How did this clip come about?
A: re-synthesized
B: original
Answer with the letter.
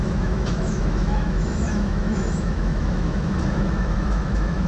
A